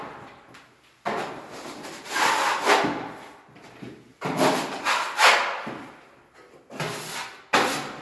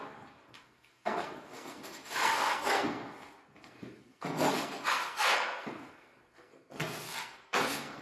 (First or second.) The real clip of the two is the first